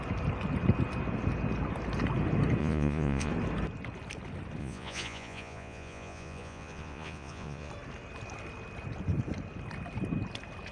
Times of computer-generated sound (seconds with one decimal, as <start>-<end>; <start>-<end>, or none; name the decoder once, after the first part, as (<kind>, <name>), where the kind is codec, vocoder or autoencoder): 2.6-3.3 (vocoder, Vocos); 4.6-7.7